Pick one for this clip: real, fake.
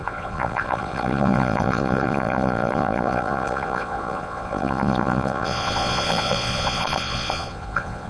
fake